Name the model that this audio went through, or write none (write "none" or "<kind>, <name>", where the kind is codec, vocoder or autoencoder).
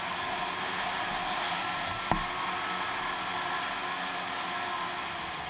none